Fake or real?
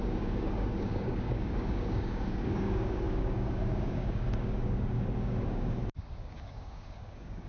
fake